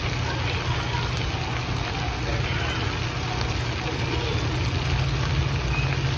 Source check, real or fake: real